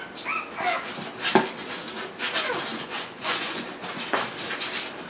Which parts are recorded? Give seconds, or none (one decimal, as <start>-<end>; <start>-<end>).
0.0-2.7; 3.7-5.1